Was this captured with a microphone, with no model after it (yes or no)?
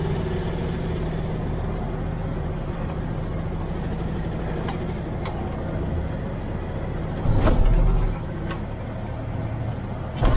yes